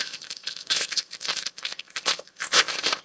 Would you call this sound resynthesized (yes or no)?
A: yes